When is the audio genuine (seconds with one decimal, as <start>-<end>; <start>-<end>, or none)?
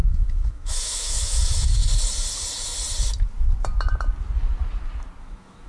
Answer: 1.8-5.2